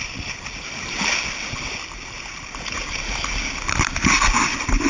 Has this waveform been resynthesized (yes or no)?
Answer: no